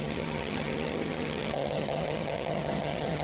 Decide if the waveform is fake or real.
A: fake